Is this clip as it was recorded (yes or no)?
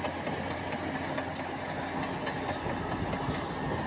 yes